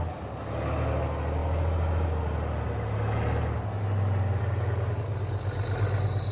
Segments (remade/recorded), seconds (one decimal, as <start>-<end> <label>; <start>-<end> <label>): 0.0-6.3 recorded